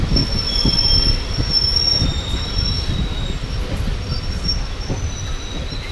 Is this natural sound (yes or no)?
yes